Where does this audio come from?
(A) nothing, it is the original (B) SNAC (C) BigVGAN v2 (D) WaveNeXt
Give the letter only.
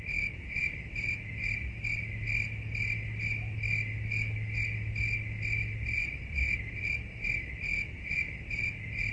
A